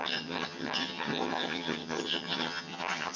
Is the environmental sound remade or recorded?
remade